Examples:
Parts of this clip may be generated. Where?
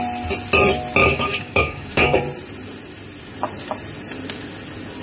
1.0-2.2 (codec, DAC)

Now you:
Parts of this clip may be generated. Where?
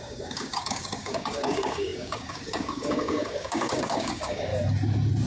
0.0-4.5 (codec, DAC)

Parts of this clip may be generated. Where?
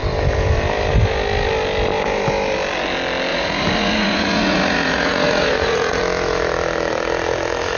3.3-6.0 (vocoder, Vocos)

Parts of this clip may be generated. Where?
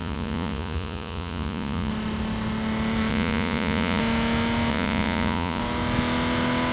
0.0-1.9 (vocoder, Vocos); 3.1-4.0; 4.7-5.6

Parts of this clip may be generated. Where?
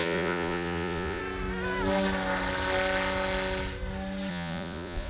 0.0-1.2 (vocoder, Vocos); 4.3-5.1